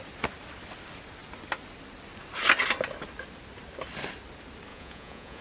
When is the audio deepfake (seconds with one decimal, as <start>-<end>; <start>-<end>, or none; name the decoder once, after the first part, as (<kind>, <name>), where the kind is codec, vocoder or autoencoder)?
4.7-5.4 (vocoder, Vocos)